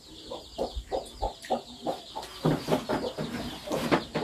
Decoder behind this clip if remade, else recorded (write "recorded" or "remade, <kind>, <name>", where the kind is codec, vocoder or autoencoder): recorded